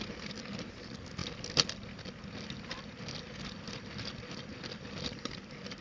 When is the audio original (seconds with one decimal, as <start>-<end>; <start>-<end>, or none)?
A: 0.0-5.8